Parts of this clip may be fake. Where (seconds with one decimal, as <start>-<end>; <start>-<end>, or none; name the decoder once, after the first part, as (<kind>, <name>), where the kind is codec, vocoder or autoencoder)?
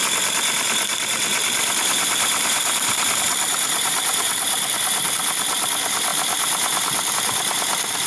none